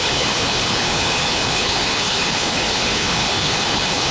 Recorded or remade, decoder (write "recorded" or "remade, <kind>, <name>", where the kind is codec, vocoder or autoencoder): remade, codec, HILCodec